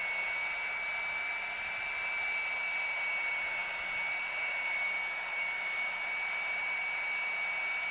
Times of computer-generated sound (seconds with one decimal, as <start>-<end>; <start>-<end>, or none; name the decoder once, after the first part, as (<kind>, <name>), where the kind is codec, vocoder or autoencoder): none